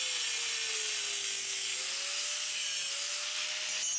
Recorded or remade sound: recorded